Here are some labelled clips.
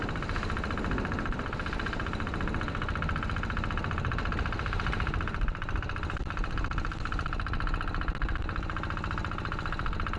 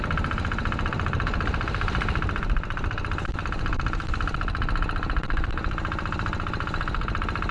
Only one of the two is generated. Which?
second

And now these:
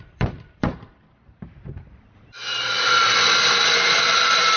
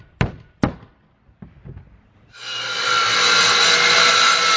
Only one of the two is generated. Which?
first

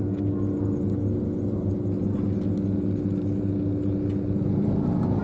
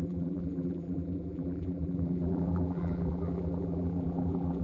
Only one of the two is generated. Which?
second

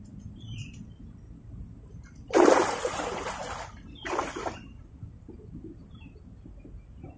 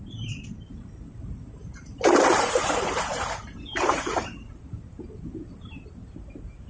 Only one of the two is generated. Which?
second